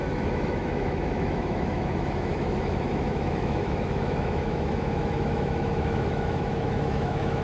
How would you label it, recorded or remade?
remade